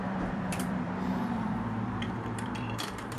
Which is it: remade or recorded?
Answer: remade